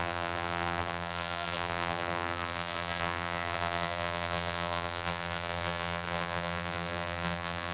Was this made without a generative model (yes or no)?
no